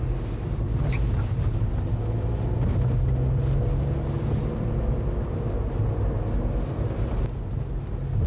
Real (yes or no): yes